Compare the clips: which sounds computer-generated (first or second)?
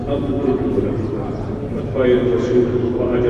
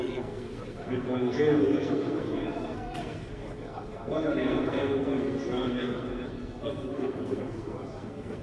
second